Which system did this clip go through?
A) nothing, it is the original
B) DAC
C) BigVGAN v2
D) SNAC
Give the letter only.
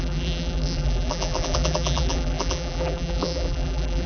C